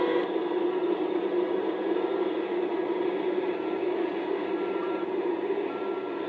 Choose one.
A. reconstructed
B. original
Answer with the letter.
B